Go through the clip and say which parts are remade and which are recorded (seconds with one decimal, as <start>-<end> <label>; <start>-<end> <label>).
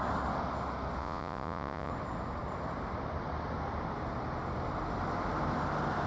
0.0-1.0 recorded; 1.0-1.9 remade; 1.9-6.1 recorded